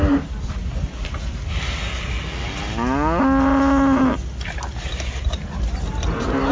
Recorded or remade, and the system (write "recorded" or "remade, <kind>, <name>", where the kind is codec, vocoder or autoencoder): recorded